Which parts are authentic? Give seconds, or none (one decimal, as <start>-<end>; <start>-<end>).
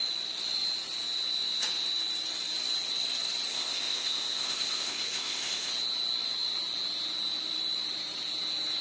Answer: 0.0-3.5; 5.7-8.8